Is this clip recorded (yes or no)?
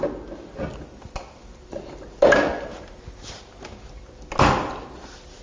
yes